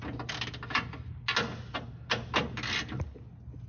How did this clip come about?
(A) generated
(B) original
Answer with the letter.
B